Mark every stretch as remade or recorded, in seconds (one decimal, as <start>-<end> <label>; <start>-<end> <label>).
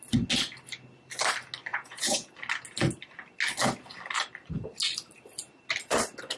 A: 0.0-1.7 recorded; 1.7-2.3 remade; 2.3-6.4 recorded